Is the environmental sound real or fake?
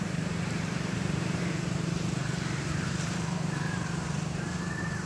fake